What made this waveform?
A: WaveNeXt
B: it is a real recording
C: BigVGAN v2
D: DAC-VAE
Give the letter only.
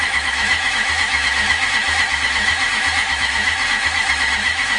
D